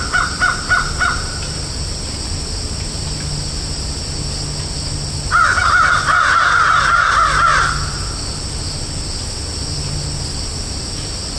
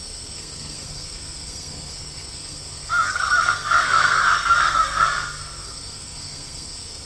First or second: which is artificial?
second